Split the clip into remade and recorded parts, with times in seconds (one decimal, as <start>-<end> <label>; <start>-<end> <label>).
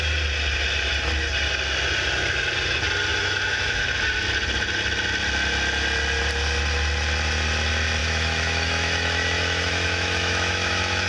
0.0-3.1 recorded; 3.1-3.9 remade; 3.9-8.0 recorded; 8.0-11.1 remade